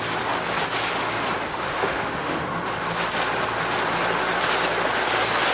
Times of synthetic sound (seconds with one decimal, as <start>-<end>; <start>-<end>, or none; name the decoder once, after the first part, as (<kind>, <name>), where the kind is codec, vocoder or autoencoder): 1.5-2.5 (autoencoder, DAC-VAE)